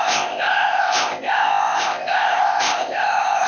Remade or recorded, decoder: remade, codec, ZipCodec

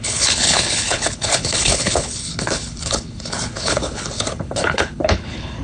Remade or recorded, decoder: remade, codec, HILCodec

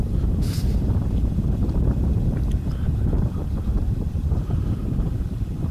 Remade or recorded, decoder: remade, vocoder, BigVGAN v2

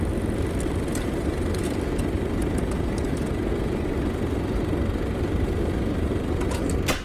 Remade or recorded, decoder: recorded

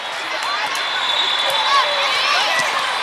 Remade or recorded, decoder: remade, vocoder, BigVGAN v2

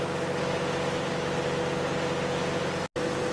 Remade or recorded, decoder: recorded